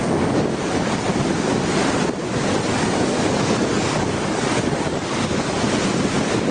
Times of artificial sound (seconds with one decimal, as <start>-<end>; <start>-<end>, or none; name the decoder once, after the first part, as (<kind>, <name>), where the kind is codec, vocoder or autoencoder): 0.0-1.1 (codec, DAC); 2.7-5.5